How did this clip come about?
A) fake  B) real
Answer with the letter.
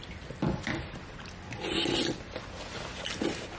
B